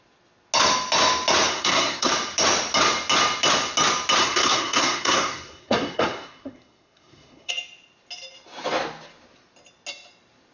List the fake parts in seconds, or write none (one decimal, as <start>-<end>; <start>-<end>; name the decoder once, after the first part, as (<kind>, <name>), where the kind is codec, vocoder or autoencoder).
1.5-2.1 (codec, SNAC); 4.2-7.5